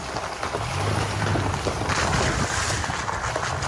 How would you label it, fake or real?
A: real